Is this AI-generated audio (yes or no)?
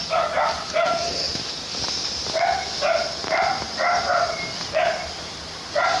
no